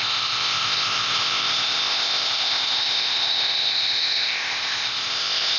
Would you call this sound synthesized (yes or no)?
yes